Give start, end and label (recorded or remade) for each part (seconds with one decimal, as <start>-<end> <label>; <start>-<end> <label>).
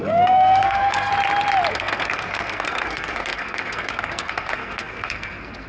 0.0-1.1 remade; 1.1-1.7 recorded; 1.7-5.7 remade